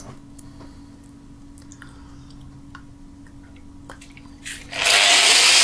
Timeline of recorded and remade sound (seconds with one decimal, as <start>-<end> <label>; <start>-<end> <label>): 0.0-5.6 recorded